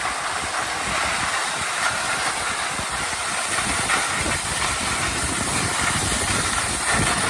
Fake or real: real